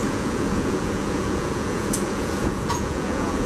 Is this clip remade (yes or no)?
yes